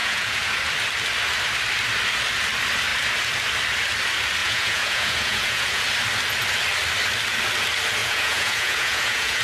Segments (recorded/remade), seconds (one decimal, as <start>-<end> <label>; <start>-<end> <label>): 0.0-0.6 remade; 0.6-4.4 recorded; 4.4-5.8 remade; 5.8-8.0 recorded; 8.0-9.4 remade